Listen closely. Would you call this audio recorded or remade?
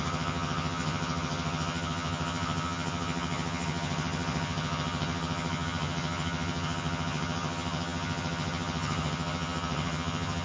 remade